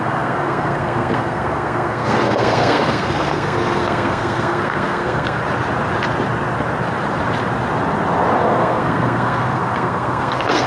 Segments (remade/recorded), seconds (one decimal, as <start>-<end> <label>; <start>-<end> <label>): 0.0-5.4 remade; 5.4-8.4 recorded; 8.4-10.7 remade